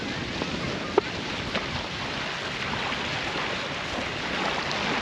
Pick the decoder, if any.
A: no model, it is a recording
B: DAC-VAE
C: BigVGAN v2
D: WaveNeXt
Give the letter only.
A